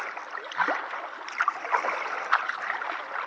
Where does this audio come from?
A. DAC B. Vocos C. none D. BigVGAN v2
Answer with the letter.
C